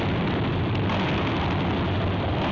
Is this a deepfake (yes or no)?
no